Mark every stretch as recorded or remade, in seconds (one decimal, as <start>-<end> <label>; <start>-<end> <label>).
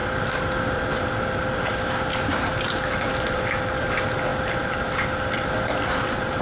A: 0.0-6.4 recorded